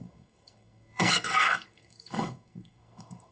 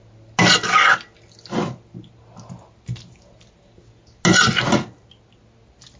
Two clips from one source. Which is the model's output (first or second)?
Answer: first